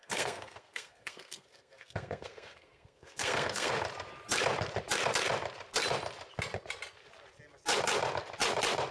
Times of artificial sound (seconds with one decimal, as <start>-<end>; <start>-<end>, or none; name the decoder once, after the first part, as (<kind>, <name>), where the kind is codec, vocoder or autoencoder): 0.0-3.7 (codec, SNAC)